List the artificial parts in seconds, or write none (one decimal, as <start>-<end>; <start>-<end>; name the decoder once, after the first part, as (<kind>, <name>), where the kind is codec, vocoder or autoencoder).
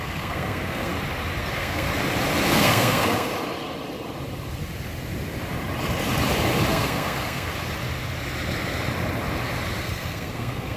0.0-0.9 (codec, SNAC); 1.4-1.9; 2.5-3.3; 6.7-7.5; 9.8-10.8